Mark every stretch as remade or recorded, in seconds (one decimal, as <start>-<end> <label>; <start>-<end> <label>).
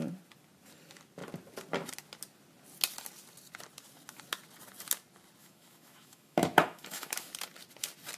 0.0-5.4 recorded; 5.4-7.3 remade; 7.3-8.2 recorded